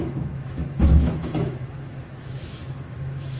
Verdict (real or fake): fake